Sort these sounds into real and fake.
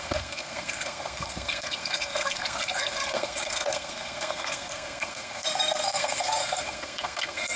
fake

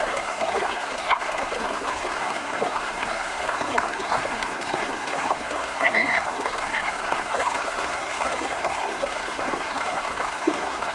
fake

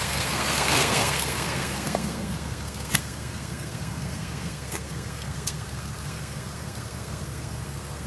fake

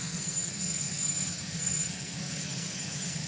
fake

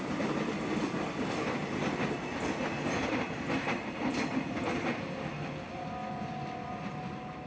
real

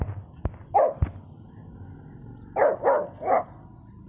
real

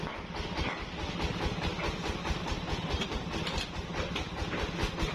real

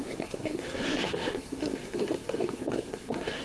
fake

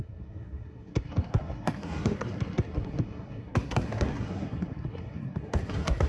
fake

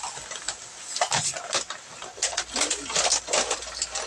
real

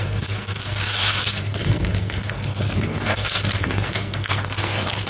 fake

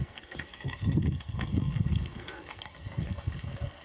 fake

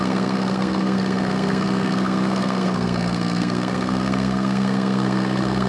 fake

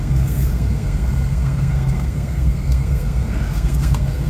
fake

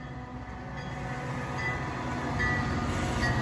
real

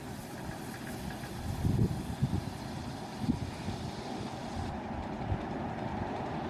real